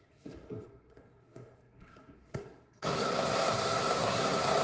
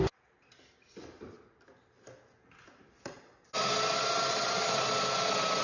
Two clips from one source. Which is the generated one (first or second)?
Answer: first